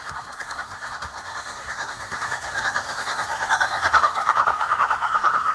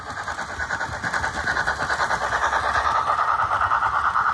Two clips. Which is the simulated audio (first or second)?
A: first